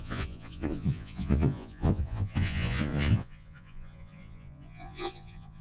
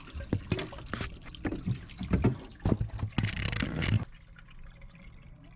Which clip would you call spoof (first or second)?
first